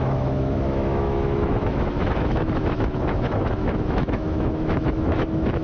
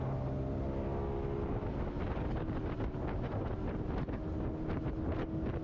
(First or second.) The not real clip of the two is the first